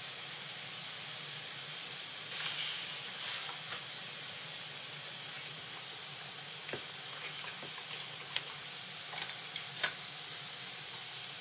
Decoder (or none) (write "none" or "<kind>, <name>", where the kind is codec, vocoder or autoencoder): none